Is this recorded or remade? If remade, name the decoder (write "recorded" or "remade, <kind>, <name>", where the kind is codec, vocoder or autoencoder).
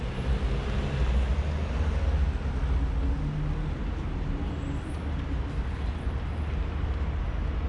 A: recorded